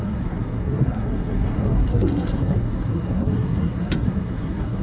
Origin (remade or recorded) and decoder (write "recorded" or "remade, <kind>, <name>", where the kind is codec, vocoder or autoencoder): remade, codec, SNAC